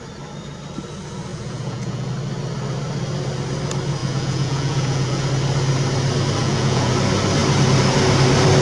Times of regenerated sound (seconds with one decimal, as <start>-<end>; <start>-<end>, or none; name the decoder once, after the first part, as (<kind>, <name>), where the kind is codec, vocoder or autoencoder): 1.3-2.1 (vocoder, Vocos); 4.0-5.3; 6.4-6.9